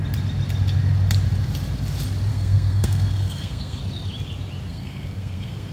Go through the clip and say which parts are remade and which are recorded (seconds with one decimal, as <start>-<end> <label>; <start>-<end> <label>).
0.0-2.3 recorded; 2.3-3.8 remade; 3.8-4.7 recorded; 4.7-5.7 remade